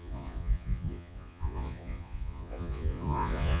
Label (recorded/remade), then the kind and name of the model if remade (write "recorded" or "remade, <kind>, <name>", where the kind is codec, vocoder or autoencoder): remade, vocoder, Vocos